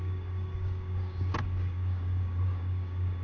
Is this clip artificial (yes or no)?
yes